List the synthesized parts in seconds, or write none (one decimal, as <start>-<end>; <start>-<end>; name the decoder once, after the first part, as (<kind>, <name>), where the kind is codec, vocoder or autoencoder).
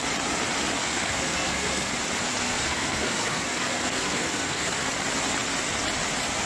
0.8-1.9 (codec, SNAC); 2.4-4.9